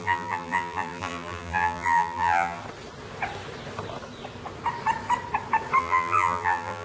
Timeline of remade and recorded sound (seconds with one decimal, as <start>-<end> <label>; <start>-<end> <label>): 0.0-2.6 remade; 2.6-5.8 recorded; 5.8-6.8 remade